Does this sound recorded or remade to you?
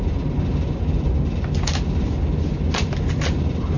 recorded